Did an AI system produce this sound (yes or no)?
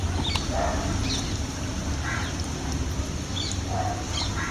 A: no